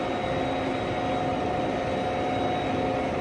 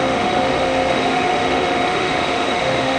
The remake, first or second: second